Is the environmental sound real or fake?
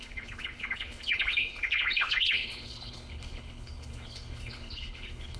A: fake